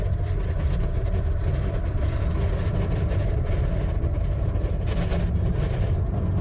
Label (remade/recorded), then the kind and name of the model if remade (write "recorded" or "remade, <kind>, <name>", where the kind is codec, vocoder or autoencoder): recorded